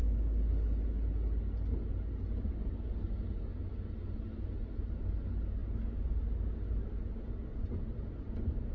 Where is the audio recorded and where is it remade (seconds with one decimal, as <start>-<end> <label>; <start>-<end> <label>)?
0.0-8.7 recorded